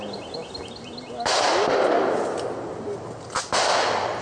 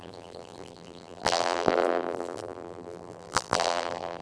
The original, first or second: first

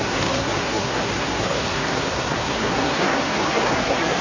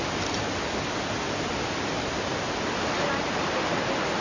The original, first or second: second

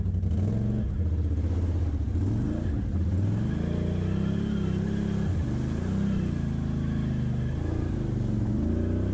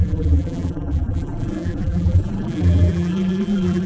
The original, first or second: first